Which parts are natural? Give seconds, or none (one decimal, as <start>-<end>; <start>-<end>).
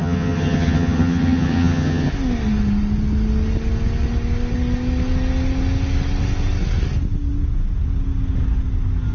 2.1-9.1